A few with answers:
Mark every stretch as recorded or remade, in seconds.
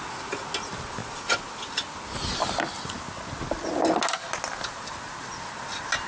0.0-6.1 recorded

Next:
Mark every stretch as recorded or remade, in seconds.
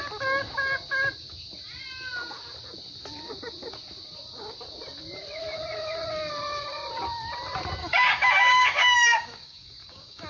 0.0-7.8 recorded; 7.8-10.3 remade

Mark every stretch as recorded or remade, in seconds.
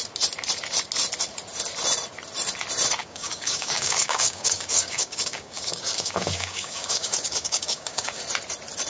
0.0-3.0 recorded; 3.0-8.2 remade; 8.2-8.9 recorded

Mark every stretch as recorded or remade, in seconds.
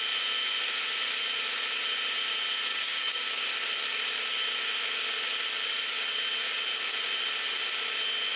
0.0-2.7 recorded; 2.7-3.4 remade; 3.4-8.4 recorded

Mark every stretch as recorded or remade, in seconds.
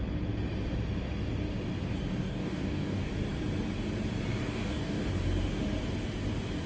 0.0-2.2 recorded; 2.2-3.1 remade; 3.1-4.4 recorded; 4.4-5.1 remade; 5.1-6.7 recorded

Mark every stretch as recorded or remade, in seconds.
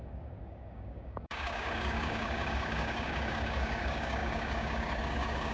0.0-5.5 remade